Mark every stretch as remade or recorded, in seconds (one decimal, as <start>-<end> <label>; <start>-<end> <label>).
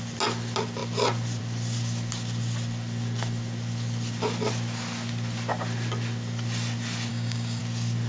0.0-7.1 recorded; 7.1-7.6 remade; 7.6-8.1 recorded